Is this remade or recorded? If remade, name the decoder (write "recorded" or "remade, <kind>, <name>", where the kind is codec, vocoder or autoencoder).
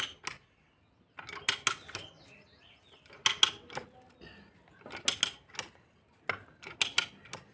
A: recorded